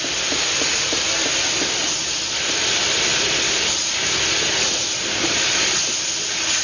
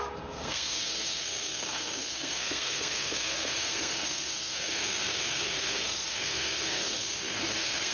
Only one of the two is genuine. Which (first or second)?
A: first